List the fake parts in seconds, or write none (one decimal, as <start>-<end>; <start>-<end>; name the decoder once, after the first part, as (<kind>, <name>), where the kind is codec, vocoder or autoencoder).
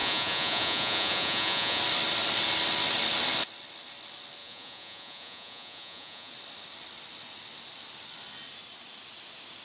0.0-1.8 (vocoder, Vocos); 4.4-6.3